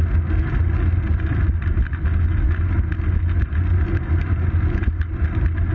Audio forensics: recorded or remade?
recorded